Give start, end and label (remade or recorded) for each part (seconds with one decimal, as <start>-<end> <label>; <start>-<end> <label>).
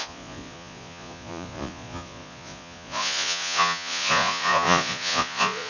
0.0-5.7 remade